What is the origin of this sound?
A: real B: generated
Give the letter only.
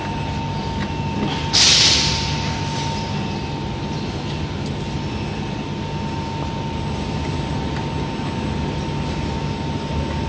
A